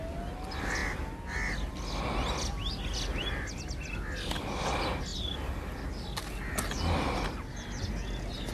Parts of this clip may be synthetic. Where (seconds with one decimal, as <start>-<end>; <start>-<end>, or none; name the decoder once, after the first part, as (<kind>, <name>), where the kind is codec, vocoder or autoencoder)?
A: none